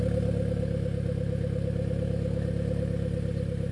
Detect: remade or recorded recorded